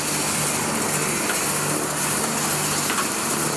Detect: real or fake real